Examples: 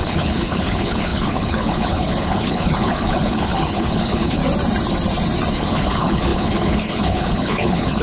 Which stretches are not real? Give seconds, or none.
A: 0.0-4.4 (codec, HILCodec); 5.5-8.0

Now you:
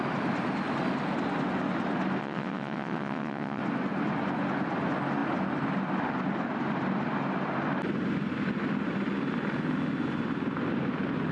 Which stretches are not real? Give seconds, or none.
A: 2.2-3.6 (vocoder, WaveNeXt)